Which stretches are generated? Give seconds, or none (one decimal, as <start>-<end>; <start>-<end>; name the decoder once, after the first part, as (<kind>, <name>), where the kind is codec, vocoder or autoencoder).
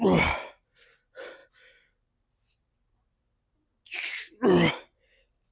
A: none